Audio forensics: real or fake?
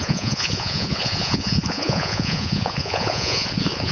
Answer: fake